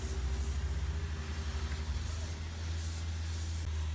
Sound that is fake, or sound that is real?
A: real